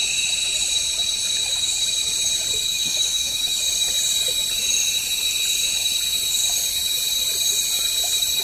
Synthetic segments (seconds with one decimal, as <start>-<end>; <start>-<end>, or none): 2.7-3.6